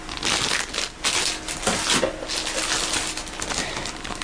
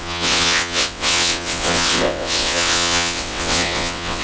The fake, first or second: second